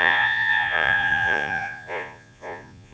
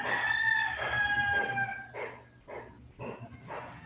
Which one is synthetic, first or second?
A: first